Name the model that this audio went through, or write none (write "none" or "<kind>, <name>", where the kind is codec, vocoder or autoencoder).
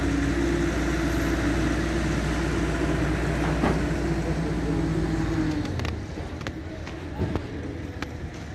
none